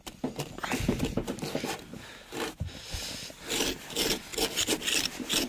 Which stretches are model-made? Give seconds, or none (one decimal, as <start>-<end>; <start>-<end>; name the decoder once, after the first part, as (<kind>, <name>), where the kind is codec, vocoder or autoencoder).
none